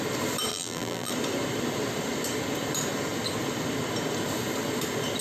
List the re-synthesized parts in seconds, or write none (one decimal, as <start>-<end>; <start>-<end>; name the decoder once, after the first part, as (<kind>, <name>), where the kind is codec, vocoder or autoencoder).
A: 0.5-1.1 (vocoder, BigVGAN v2)